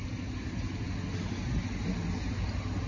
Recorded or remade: recorded